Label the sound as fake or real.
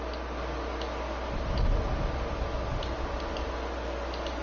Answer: real